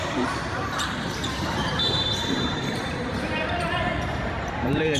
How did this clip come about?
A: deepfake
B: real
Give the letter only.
A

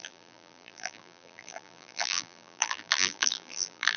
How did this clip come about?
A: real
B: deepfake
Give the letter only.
B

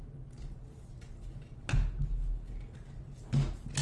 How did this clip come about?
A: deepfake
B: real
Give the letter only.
B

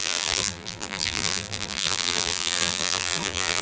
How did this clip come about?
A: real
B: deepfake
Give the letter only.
B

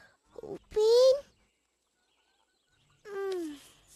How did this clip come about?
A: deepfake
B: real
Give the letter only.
B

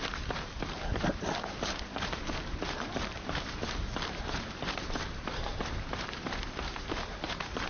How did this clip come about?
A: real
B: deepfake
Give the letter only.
B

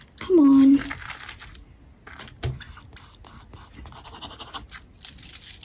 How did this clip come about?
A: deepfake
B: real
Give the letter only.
B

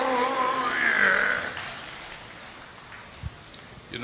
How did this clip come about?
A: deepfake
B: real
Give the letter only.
B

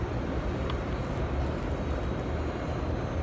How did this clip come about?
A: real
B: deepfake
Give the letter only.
A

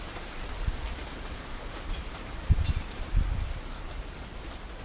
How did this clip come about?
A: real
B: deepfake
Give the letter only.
B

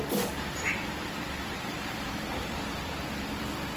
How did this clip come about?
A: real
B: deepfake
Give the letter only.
B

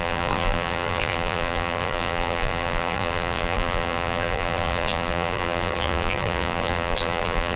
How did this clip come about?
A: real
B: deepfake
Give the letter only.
B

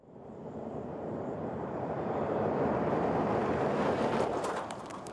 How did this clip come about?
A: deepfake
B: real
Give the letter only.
A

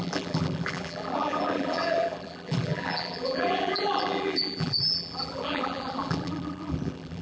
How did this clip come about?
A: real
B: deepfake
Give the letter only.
B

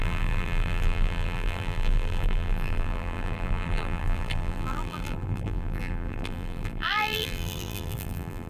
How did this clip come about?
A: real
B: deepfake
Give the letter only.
B